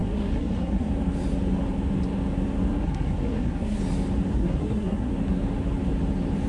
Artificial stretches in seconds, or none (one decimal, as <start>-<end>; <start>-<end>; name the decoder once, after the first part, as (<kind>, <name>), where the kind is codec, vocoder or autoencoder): 0.0-0.9 (codec, SNAC); 2.7-3.8; 4.3-5.1